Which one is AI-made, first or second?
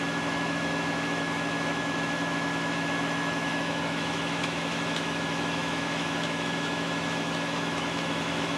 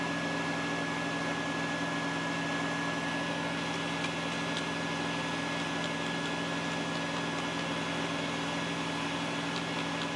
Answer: first